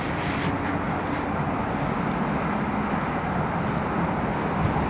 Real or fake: real